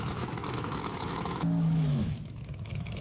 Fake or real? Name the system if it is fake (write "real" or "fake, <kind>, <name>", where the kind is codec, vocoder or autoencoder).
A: fake, autoencoder, DAC-VAE